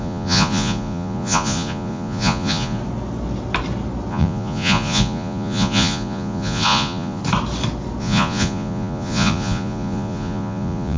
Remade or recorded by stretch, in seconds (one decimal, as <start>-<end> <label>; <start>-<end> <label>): 0.0-2.8 remade; 2.8-4.1 recorded; 4.1-7.2 remade; 7.2-8.0 recorded; 8.0-11.0 remade